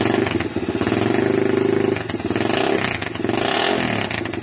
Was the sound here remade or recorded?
recorded